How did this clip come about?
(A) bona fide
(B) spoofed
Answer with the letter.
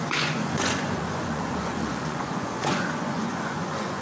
B